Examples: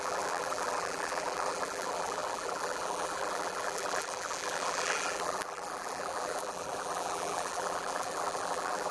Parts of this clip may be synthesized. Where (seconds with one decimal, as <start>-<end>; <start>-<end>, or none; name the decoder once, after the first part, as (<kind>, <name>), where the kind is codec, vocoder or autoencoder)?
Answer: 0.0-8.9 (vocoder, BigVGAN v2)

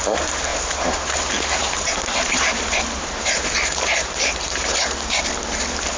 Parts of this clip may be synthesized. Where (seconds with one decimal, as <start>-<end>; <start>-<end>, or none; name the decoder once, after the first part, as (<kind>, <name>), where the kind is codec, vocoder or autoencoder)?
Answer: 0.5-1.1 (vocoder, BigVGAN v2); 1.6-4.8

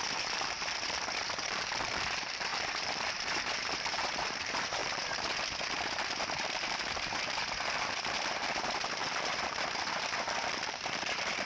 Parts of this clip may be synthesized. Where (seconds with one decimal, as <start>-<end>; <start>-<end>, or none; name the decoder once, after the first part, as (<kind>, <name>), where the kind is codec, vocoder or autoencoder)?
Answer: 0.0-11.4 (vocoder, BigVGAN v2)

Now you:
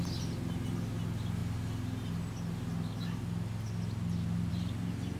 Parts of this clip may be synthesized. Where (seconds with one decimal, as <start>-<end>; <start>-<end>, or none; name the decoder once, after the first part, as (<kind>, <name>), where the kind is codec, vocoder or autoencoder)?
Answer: none